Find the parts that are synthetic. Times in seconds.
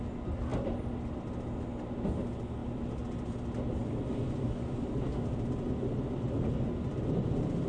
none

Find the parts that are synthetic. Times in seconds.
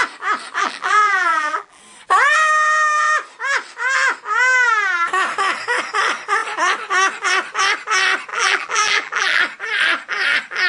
0.6-1.8 (vocoder, BigVGAN v2); 8.3-9.4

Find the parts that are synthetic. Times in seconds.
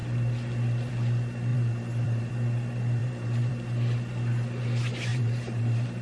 1.5-2.3 (vocoder, BigVGAN v2); 3.0-3.5; 5.1-6.0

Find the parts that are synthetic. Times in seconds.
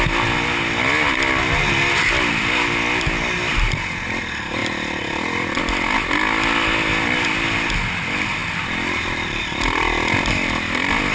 4.6-5.6 (vocoder, BigVGAN v2); 8.4-10.3